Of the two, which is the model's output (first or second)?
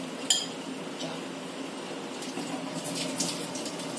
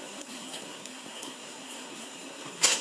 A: second